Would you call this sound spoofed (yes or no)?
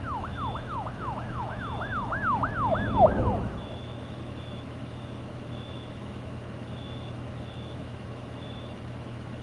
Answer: yes